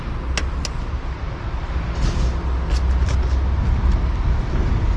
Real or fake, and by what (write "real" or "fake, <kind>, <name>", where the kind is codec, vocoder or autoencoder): real